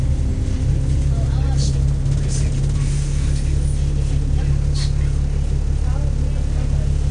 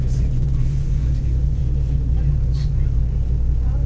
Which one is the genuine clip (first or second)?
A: first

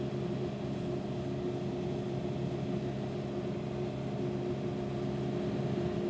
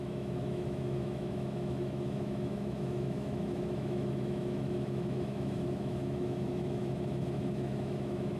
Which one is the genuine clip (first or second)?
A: first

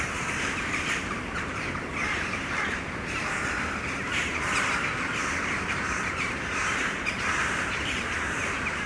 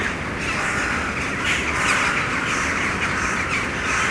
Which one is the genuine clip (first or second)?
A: second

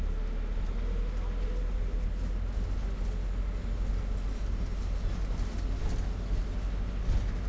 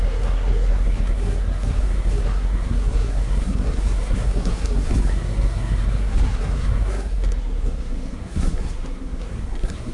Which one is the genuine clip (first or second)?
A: first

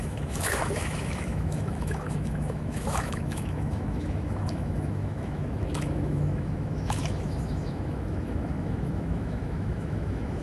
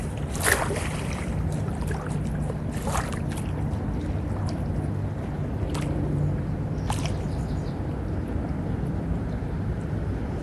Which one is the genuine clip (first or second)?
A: second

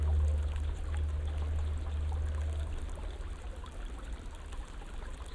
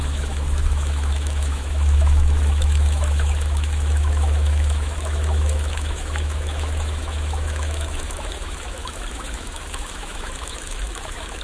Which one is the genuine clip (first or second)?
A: first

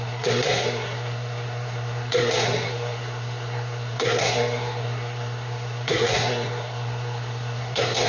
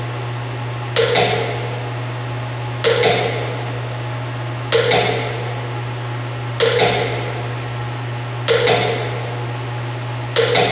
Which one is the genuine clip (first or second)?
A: second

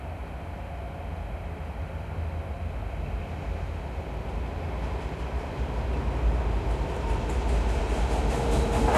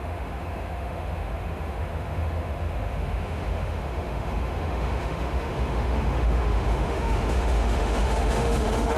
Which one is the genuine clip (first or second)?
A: first